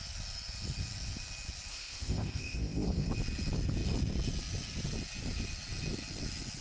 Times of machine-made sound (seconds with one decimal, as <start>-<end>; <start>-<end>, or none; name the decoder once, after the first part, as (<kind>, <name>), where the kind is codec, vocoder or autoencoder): 1.7-3.1 (codec, ZipCodec)

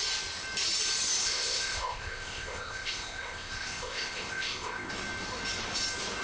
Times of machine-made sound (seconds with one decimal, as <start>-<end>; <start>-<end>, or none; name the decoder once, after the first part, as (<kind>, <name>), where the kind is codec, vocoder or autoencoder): 1.2-4.9 (codec, ZipCodec)

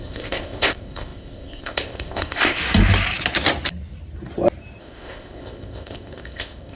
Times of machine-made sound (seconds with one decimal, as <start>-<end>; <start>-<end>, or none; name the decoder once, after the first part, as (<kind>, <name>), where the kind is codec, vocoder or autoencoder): 0.0-2.6 (codec, ZipCodec); 4.8-6.8

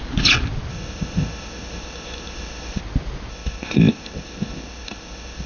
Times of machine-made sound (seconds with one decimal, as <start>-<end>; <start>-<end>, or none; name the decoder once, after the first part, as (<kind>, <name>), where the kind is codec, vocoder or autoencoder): 0.7-2.8 (codec, ZipCodec); 3.3-5.5